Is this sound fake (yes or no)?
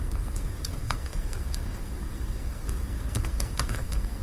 yes